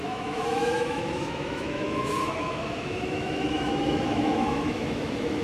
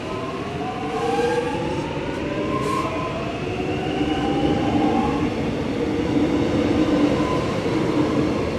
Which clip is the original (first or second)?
second